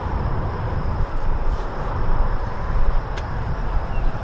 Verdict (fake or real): fake